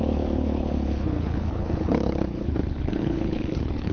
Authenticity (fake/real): fake